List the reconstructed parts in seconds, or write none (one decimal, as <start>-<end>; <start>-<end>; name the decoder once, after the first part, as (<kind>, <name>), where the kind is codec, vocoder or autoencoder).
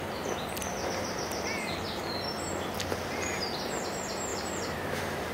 0.6-2.0 (vocoder, BigVGAN v2); 4.3-5.3